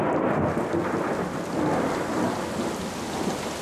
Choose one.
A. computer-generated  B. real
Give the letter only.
B